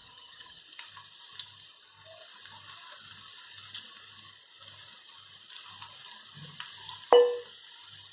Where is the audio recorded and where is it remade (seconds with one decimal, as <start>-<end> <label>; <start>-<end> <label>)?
0.0-0.6 remade; 0.6-8.1 recorded